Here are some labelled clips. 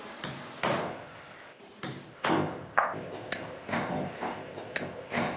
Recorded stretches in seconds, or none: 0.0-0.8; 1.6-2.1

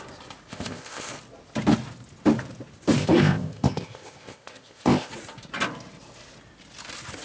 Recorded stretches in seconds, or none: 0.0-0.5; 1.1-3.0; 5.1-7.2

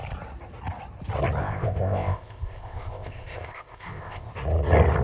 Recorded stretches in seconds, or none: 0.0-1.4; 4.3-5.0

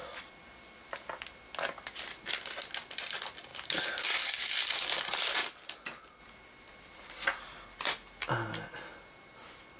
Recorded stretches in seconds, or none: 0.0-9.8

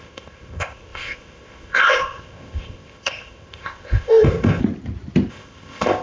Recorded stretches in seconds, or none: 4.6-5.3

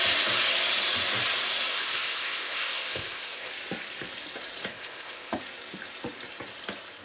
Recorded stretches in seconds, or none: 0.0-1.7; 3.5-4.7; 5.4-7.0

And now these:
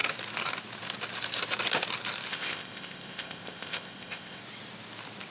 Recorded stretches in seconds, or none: 0.0-2.3; 4.4-5.3